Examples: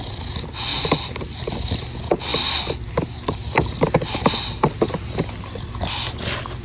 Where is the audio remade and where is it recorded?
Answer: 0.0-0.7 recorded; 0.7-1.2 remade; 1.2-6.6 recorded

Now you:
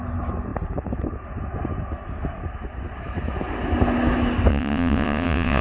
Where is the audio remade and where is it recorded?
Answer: 0.0-4.5 recorded; 4.5-5.6 remade